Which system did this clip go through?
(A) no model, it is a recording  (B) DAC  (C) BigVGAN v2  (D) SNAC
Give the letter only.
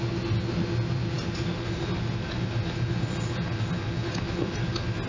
A